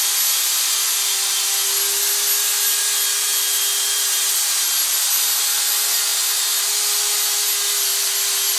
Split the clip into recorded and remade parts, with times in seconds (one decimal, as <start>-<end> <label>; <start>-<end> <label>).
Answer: 0.0-8.6 recorded